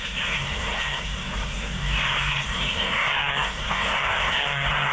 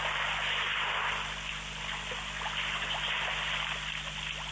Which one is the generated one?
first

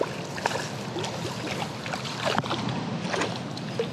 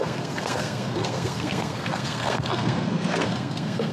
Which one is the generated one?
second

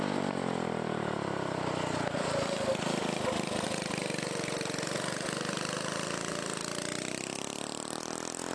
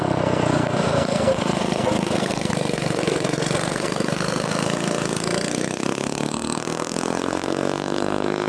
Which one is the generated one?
second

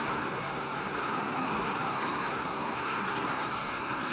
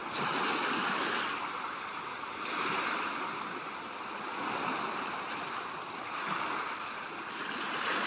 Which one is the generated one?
first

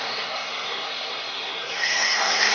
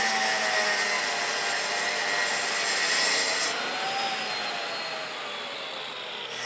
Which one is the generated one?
first